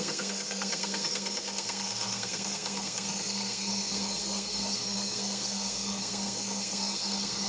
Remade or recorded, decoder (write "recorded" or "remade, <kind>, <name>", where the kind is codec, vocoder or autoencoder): remade, codec, SNAC